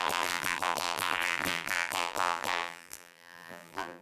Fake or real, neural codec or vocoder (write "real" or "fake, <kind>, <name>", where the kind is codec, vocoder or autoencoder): fake, vocoder, BigVGAN v2